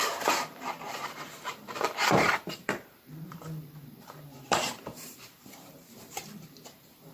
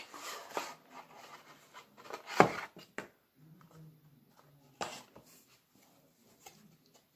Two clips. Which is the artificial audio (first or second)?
first